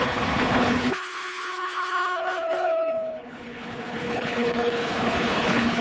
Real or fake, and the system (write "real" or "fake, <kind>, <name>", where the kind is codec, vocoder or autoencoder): fake, codec, HILCodec